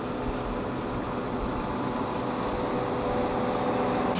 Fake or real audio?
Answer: real